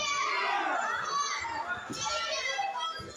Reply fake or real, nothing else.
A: real